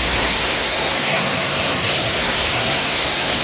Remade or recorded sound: remade